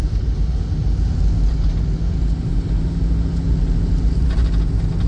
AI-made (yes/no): no